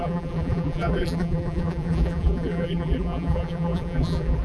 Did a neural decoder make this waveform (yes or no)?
yes